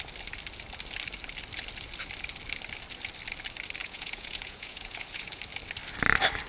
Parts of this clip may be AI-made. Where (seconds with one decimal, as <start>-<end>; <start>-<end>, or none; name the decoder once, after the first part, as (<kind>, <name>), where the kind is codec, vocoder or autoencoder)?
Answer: 3.8-5.4 (vocoder, Vocos)